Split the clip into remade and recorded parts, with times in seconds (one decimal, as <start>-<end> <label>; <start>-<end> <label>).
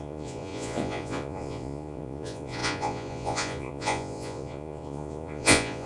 0.0-5.9 remade